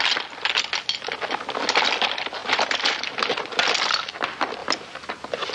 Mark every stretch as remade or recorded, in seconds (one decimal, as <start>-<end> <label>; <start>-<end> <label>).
0.0-2.4 recorded; 2.4-3.5 remade; 3.5-5.5 recorded